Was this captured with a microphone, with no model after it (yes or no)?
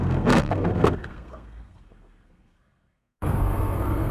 no